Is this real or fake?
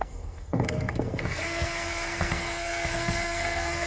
fake